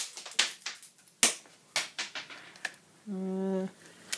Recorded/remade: recorded